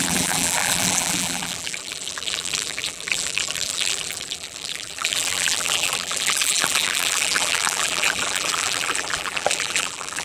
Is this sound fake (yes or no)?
yes